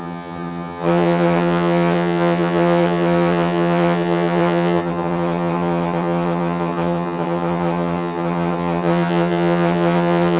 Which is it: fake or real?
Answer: fake